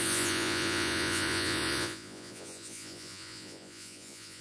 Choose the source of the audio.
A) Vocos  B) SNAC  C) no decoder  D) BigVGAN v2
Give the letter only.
A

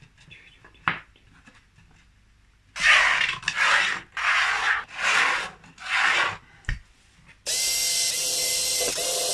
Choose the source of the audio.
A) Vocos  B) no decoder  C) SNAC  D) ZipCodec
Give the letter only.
B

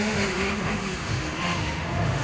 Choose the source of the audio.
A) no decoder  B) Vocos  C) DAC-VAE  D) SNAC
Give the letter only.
C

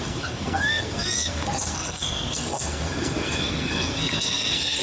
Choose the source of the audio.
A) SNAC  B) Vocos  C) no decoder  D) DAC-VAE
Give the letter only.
A